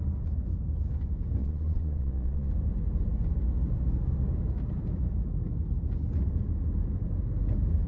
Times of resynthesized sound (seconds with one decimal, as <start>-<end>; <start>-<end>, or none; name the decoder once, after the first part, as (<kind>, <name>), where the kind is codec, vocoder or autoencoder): 1.4-2.5 (vocoder, Vocos)